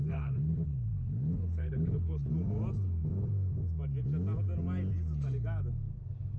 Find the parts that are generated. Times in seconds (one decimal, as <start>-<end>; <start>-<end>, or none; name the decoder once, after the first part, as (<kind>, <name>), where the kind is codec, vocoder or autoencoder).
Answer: 0.0-2.3 (codec, HILCodec)